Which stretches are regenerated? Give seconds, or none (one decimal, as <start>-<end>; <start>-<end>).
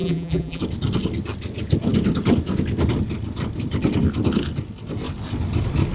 0.0-0.6